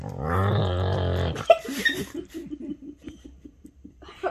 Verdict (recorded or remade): recorded